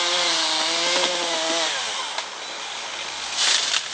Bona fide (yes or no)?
yes